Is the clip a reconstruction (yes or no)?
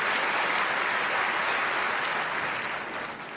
no